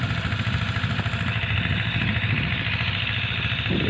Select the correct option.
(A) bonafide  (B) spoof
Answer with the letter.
A